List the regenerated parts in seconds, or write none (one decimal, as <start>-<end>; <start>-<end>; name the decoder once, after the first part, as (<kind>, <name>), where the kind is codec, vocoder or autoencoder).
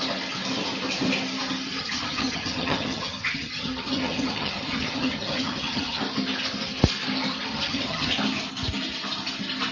1.8-6.0 (vocoder, HiFi-GAN); 7.5-8.1